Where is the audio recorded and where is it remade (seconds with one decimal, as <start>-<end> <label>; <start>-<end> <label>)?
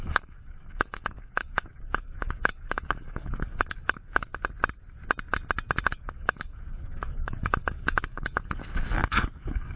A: 0.0-4.3 remade; 4.3-5.8 recorded; 5.8-9.8 remade